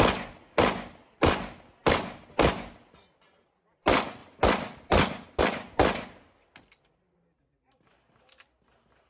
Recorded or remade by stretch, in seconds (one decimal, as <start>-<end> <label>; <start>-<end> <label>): 0.0-9.1 recorded